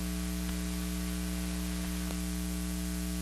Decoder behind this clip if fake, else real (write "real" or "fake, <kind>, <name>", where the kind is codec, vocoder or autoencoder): real